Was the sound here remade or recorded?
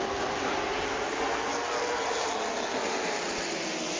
recorded